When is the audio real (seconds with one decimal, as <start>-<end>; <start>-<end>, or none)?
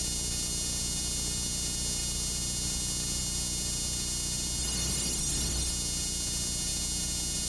0.0-4.6; 5.7-7.5